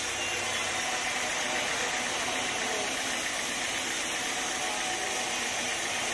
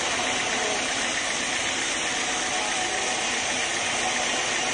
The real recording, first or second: first